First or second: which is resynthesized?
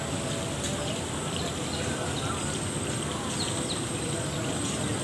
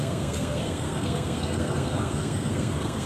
second